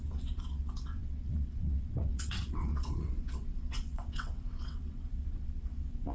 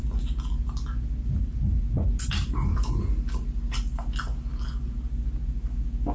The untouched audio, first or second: second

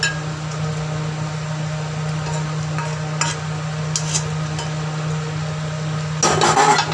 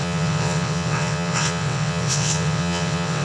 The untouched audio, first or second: first